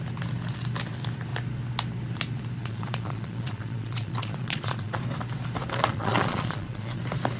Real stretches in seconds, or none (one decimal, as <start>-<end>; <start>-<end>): 0.0-2.6; 5.0-5.9; 7.0-7.4